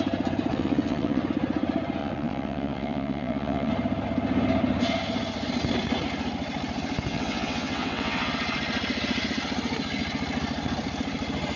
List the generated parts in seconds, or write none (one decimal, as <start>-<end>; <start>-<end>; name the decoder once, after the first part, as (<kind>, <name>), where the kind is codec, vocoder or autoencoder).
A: 0.5-1.2 (vocoder, WaveNeXt); 2.0-3.7; 7.1-8.3